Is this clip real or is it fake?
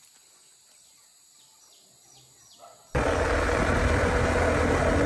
real